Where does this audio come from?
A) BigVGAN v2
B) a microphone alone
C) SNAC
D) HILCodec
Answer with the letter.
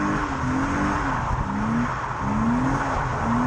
B